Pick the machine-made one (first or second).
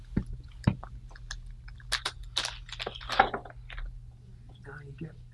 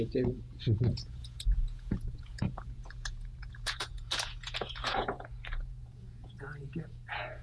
second